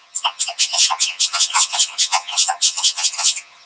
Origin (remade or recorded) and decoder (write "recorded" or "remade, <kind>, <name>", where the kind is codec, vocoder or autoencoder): remade, vocoder, HiFi-GAN